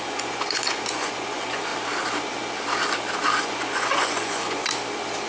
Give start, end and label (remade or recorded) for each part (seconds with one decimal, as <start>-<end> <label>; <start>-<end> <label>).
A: 0.0-1.7 remade; 1.7-3.4 recorded; 3.4-4.6 remade; 4.6-5.3 recorded